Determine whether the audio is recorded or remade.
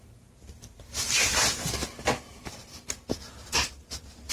recorded